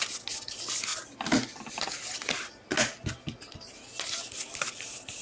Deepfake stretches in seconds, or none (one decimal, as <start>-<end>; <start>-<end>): none